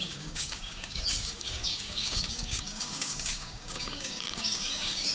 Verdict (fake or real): fake